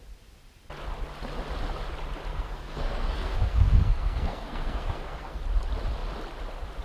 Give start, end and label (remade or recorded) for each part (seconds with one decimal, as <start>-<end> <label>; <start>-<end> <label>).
0.0-2.3 recorded; 2.3-5.4 remade; 5.4-6.8 recorded